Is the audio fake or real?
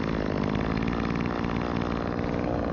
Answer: real